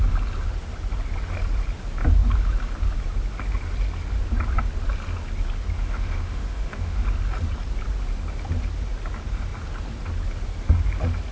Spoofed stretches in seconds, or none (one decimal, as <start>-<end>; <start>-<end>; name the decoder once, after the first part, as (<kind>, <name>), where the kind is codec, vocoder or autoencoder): 5.8-7.0 (autoencoder, DAC-VAE)